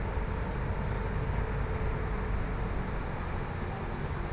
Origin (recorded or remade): recorded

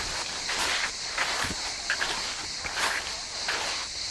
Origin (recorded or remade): recorded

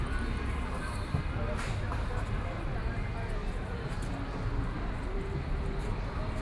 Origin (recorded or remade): recorded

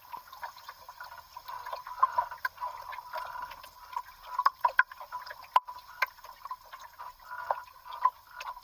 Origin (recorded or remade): recorded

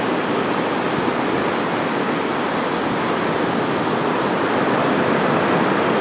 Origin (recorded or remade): recorded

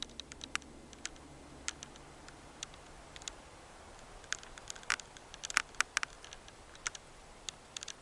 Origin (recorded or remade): recorded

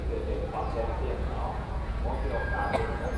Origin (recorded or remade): remade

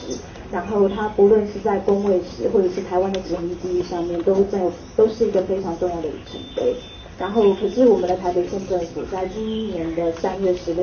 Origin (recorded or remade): recorded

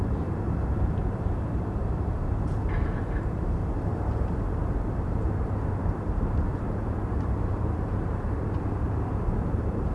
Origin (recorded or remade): remade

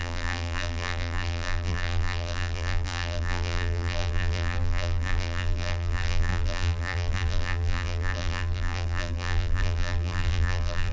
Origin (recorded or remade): remade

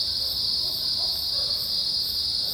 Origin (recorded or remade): recorded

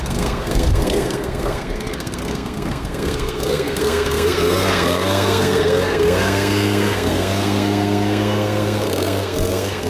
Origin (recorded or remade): remade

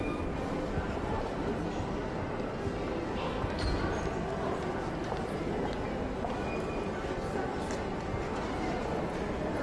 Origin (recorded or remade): recorded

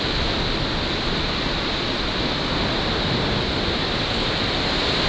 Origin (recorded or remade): recorded